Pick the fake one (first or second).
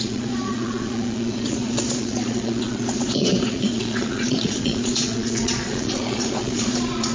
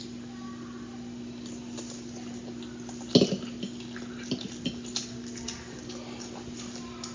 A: first